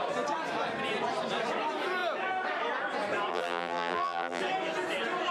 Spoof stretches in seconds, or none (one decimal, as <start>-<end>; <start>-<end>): 3.3-4.4